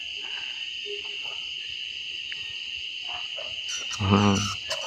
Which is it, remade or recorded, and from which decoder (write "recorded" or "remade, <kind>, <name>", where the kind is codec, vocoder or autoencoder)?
recorded